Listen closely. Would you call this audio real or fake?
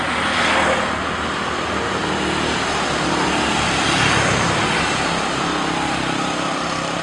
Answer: real